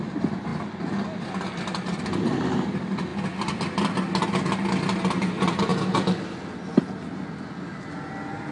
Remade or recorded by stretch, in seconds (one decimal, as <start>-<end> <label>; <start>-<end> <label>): 0.0-8.5 recorded